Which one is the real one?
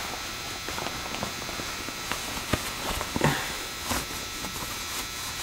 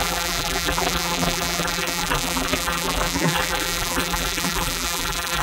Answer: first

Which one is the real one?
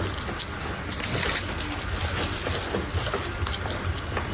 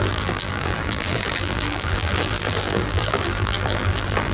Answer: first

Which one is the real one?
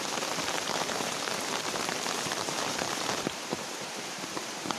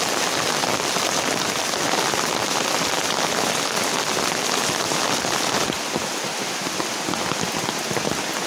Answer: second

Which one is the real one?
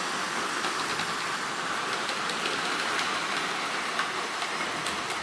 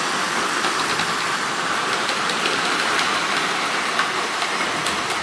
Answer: first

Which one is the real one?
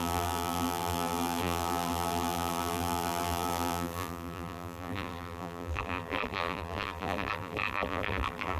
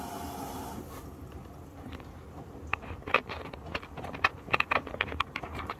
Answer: second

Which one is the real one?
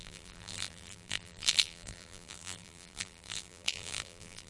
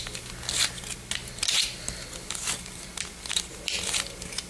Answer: second